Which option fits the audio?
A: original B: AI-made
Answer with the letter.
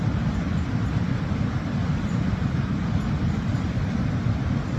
A